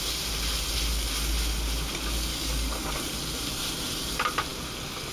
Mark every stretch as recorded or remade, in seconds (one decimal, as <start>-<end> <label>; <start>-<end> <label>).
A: 0.0-2.3 recorded; 2.3-2.9 remade; 2.9-5.1 recorded